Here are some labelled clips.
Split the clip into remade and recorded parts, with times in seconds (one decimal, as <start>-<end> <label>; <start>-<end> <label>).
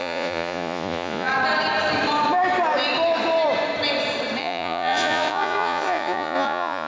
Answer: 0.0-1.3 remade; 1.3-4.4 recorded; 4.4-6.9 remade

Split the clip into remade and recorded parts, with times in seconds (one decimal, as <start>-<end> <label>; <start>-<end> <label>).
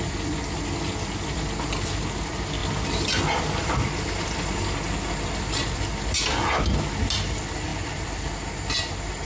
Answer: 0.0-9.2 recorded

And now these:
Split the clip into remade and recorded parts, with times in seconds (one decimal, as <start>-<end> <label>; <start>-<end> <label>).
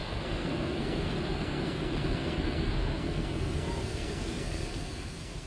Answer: 0.0-5.5 remade